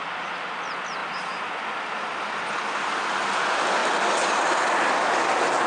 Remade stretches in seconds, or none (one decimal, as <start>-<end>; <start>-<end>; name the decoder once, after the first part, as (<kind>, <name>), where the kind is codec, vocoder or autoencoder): none